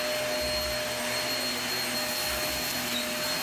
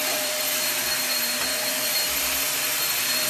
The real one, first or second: first